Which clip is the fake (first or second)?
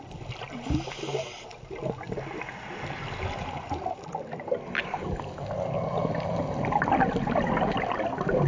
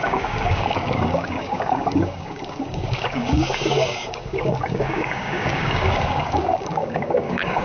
second